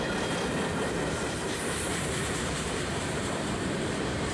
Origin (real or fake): fake